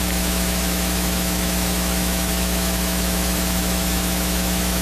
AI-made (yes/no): yes